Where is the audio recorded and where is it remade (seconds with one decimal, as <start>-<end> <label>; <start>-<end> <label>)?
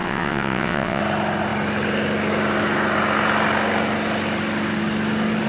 0.0-1.0 remade; 1.0-5.5 recorded